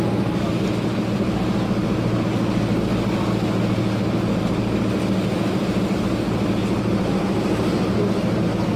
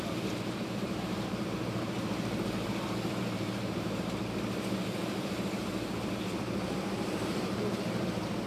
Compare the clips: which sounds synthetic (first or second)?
second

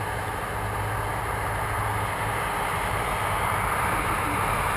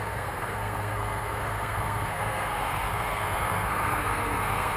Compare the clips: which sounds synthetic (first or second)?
second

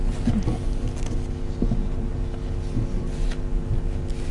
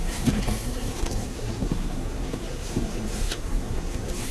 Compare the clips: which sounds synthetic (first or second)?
second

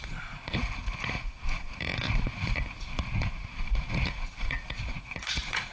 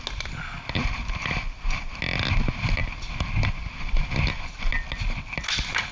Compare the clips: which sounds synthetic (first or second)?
first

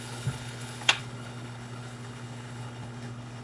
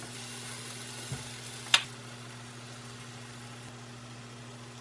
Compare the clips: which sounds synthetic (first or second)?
first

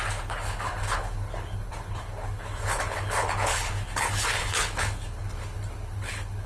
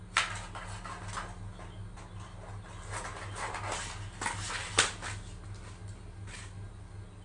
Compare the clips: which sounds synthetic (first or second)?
first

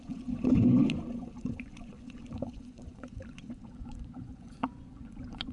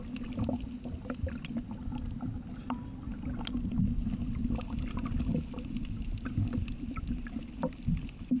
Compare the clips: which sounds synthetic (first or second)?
first